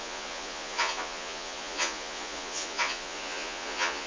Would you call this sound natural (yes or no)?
no